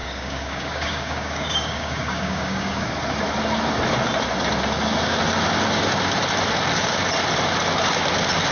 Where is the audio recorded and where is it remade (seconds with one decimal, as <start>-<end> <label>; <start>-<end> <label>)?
0.0-2.9 remade; 2.9-8.5 recorded